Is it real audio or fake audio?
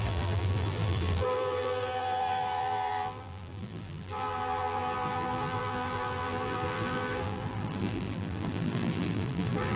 fake